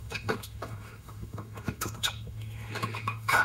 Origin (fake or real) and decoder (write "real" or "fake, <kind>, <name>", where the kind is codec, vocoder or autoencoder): fake, autoencoder, DAC-VAE